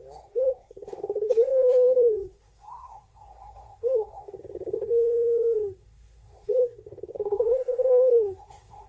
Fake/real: fake